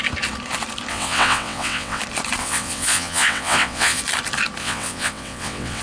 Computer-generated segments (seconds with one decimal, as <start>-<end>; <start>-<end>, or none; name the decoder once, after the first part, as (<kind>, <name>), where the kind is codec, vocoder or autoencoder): 0.9-2.0 (vocoder, WaveNeXt); 2.4-4.0; 4.6-5.8